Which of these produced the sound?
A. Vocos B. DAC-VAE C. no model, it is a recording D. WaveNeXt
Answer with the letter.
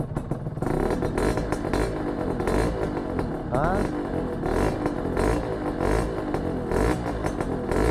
C